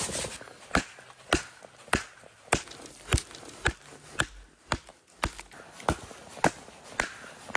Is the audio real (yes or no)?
yes